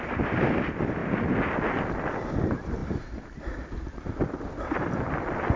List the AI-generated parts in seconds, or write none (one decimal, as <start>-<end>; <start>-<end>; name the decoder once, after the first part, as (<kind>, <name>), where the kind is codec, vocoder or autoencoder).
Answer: 0.0-1.0 (vocoder, BigVGAN v2); 1.7-5.6